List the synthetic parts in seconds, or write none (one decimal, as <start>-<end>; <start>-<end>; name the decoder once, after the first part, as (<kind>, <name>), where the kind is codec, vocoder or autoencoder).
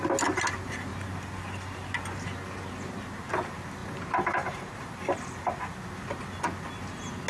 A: 3.8-5.3 (vocoder, BigVGAN v2)